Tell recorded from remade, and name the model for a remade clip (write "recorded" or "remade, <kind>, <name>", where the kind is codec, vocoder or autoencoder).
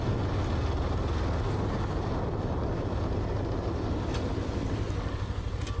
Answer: recorded